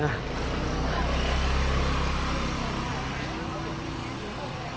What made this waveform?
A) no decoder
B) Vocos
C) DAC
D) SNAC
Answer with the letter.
A